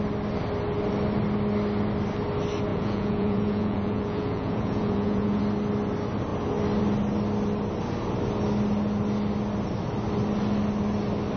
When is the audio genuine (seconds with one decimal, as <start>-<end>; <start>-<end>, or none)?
0.0-2.7; 5.4-11.4